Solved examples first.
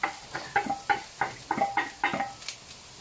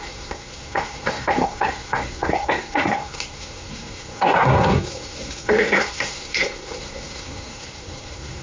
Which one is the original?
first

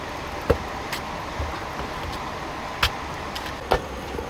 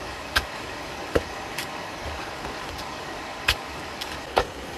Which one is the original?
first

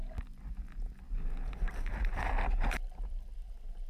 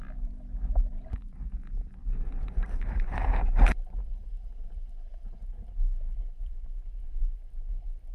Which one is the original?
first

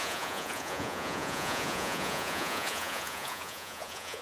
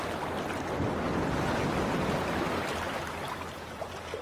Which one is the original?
second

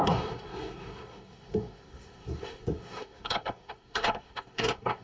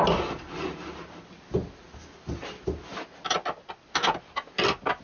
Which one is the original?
second